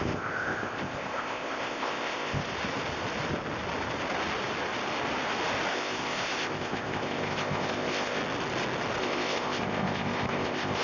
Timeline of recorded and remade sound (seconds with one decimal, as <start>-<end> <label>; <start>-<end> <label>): 0.0-2.4 remade; 2.4-5.7 recorded; 5.7-8.2 remade; 8.2-9.0 recorded; 9.0-10.8 remade